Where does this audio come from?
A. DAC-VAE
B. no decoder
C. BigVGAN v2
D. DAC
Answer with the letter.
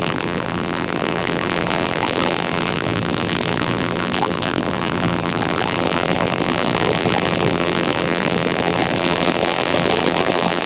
C